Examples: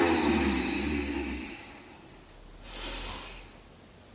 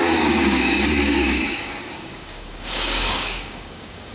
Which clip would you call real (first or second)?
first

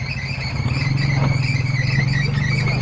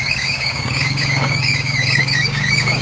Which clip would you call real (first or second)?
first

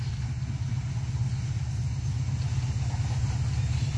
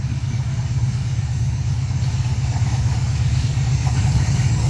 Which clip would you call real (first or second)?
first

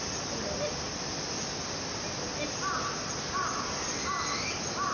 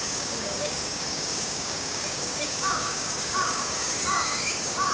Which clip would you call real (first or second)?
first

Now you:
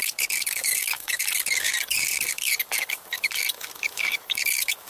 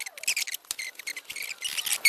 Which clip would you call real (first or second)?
second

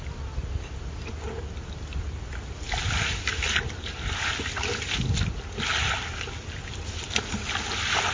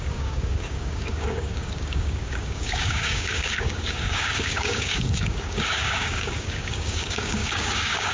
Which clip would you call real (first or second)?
first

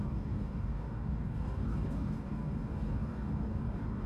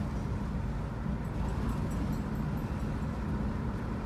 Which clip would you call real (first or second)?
second